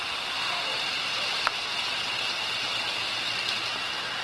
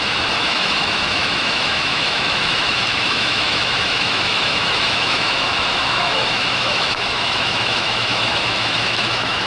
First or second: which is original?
first